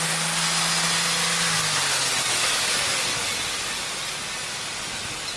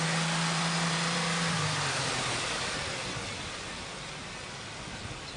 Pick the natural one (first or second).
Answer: first